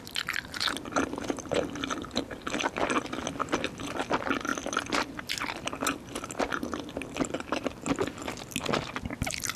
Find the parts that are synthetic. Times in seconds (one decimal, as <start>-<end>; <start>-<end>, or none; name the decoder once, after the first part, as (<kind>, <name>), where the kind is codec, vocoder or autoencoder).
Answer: none

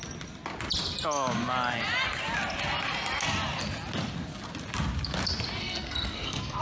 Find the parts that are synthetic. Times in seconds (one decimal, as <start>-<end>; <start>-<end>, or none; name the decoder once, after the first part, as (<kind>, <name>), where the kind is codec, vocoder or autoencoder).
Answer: 5.6-6.6 (codec, SNAC)

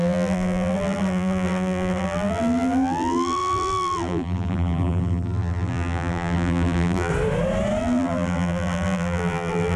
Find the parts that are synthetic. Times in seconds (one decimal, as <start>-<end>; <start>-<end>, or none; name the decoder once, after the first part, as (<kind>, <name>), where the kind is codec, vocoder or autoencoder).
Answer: 0.0-7.1 (vocoder, BigVGAN v2); 7.8-9.8

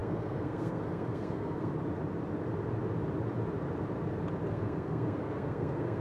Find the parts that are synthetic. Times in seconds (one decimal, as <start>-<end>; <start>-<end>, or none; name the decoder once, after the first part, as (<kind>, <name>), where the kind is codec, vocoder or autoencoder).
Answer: 0.0-1.7 (codec, SNAC); 4.5-6.0

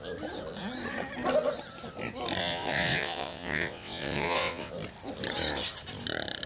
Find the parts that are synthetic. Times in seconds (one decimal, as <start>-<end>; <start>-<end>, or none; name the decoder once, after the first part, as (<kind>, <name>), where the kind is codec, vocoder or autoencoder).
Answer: 2.4-4.7 (vocoder, WaveNeXt)

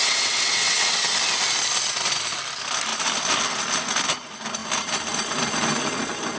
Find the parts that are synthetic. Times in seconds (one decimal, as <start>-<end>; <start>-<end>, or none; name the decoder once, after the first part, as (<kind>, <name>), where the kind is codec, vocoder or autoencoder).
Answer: 0.0-1.1 (vocoder, WaveNeXt)

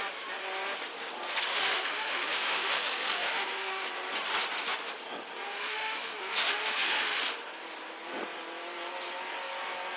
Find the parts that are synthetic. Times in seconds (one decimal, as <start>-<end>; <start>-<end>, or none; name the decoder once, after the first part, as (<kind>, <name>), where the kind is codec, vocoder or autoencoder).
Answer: 1.5-3.9 (autoencoder, DAC-VAE); 5.5-7.2